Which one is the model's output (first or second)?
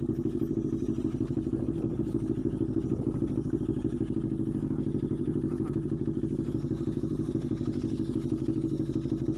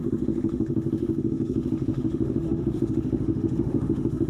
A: second